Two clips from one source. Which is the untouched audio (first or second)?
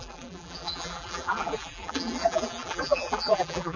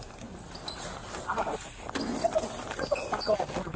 second